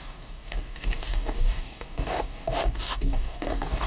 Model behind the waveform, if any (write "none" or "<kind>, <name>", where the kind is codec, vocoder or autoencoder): codec, DAC